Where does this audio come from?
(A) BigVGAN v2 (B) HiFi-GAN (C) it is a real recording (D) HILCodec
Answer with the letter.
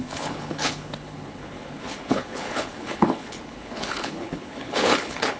D